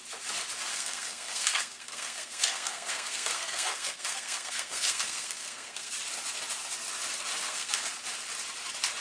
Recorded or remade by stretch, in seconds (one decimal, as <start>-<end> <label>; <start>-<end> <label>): 0.0-0.7 recorded; 0.7-5.9 remade; 5.9-7.4 recorded; 7.4-7.9 remade; 7.9-9.0 recorded